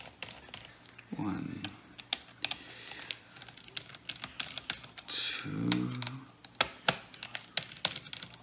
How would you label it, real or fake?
real